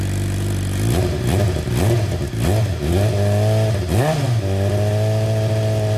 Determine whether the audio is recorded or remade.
recorded